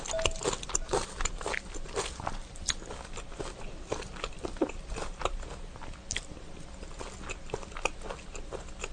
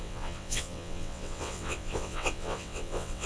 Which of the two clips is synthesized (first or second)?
second